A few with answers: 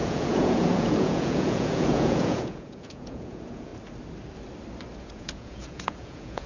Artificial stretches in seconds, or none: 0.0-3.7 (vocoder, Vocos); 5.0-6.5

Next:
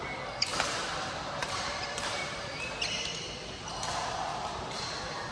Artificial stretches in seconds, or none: 0.5-2.7 (vocoder, BigVGAN v2); 4.3-4.8

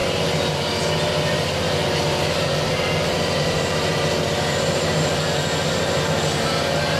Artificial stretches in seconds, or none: none

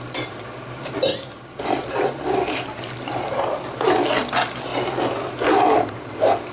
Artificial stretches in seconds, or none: none

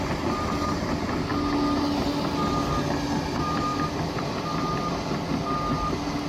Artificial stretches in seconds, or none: 3.7-4.9 (vocoder, BigVGAN v2)

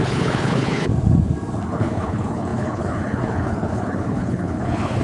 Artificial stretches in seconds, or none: 0.0-0.9 (codec, HILCodec); 1.6-5.0

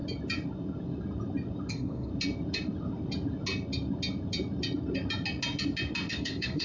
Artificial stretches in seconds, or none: 1.7-2.1 (codec, SNAC); 6.1-6.6